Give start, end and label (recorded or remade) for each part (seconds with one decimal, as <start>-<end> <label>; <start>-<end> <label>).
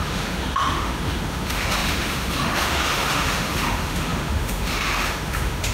0.0-5.7 remade